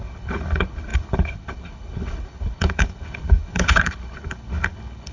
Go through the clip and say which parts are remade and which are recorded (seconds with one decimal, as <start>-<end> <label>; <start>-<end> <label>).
0.0-5.1 remade